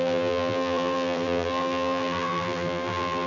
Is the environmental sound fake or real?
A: fake